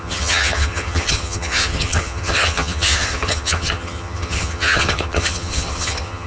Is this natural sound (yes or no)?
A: no